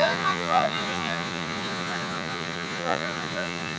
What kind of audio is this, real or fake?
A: fake